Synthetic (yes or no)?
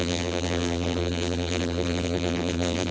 yes